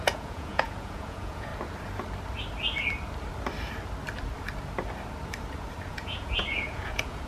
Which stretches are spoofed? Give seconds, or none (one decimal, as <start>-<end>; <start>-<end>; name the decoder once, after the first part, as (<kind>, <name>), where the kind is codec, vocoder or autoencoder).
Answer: 0.0-1.5 (vocoder, Vocos); 5.9-7.3

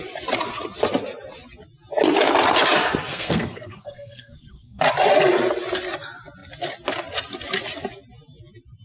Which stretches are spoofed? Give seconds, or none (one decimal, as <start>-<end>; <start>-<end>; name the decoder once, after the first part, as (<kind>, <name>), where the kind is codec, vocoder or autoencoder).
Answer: 3.1-4.8 (codec, SNAC)

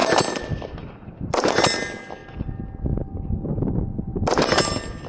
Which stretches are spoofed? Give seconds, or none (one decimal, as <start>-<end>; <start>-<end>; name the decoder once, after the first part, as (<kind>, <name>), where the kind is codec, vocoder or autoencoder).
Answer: none

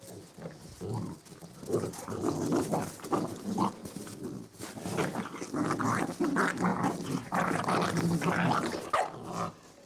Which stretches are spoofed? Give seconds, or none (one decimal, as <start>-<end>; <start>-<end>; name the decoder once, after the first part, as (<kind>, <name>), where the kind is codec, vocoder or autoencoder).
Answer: none

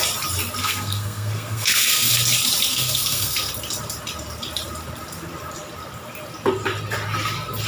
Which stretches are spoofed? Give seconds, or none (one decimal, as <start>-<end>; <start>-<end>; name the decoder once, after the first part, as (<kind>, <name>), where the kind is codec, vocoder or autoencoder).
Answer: 0.6-2.1 (codec, SNAC); 2.7-3.5